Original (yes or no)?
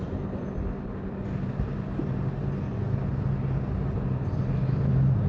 yes